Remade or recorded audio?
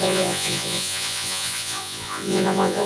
remade